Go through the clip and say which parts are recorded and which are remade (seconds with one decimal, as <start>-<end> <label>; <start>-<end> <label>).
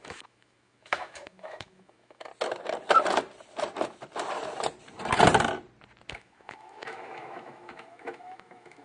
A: 0.0-2.3 remade; 2.3-6.1 recorded; 6.1-8.8 remade